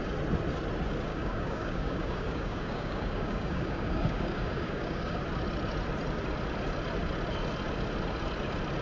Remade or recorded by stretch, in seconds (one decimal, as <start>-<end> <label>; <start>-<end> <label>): 0.0-1.1 recorded; 1.1-5.2 remade; 5.2-8.8 recorded